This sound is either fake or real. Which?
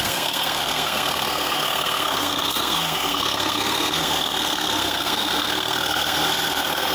fake